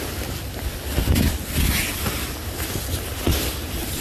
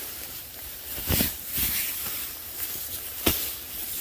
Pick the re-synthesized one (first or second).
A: second